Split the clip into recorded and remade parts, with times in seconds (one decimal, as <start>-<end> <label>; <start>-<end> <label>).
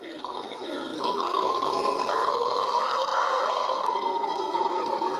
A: 0.0-5.2 remade